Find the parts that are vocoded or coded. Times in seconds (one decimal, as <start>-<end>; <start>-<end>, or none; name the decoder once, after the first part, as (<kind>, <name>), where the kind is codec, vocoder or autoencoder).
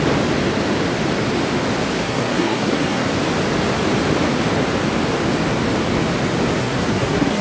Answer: 2.0-3.1 (codec, SNAC); 6.6-7.4